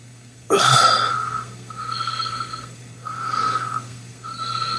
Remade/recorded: remade